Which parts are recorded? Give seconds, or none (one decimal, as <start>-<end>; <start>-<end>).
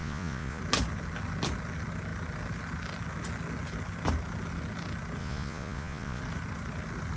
0.6-5.2; 6.2-7.2